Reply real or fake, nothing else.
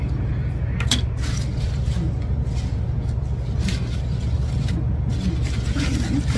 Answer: real